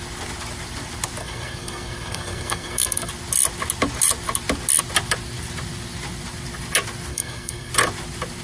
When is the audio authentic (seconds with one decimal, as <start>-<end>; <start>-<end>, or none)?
0.0-1.2; 3.1-7.1; 7.7-8.4

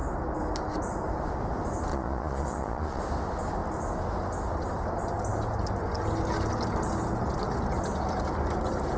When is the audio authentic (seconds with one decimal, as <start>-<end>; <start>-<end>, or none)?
0.0-1.9; 3.0-9.0

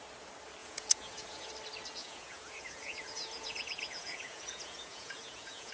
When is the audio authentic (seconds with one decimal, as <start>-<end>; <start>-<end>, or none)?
0.0-0.6; 1.5-2.0

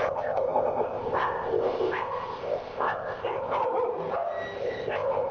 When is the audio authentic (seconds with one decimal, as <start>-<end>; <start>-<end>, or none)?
3.6-4.6

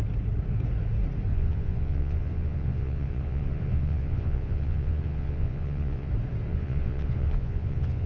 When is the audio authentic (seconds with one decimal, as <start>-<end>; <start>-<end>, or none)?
0.0-1.3; 6.1-6.5